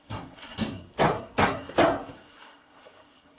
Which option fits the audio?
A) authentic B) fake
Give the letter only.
B